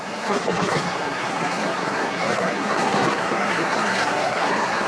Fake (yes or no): yes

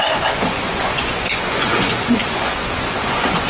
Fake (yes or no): yes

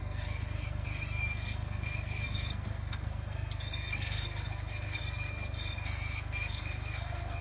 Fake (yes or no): yes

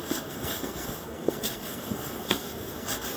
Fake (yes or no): yes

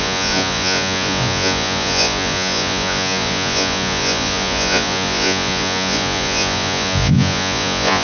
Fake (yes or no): yes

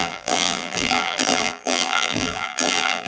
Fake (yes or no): yes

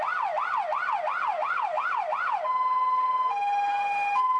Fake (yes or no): no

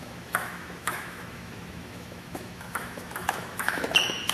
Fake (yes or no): yes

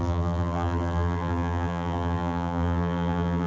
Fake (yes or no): yes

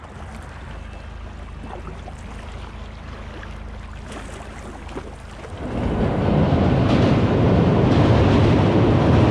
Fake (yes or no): no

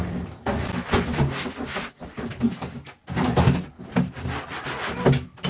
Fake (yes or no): yes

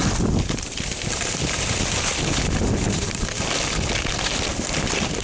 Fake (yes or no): no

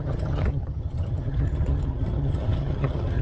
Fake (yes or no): yes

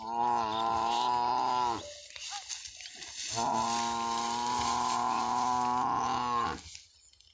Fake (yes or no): no